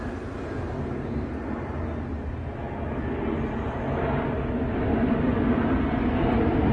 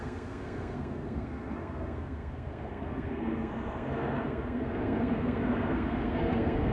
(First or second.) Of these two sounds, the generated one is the second